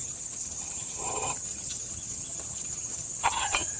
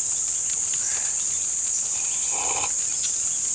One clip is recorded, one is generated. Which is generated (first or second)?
first